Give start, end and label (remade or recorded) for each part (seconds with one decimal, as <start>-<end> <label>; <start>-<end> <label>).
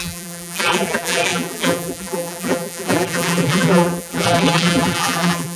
0.0-5.6 remade